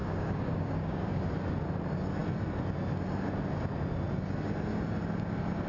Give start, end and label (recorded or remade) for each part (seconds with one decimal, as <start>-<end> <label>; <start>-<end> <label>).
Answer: 0.0-1.2 remade; 1.2-5.7 recorded